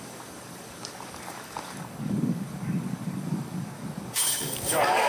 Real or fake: fake